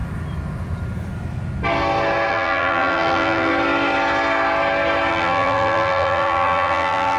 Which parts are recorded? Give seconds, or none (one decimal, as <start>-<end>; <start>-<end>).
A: 0.0-2.3; 3.5-5.1